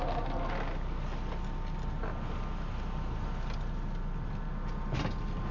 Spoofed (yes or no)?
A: no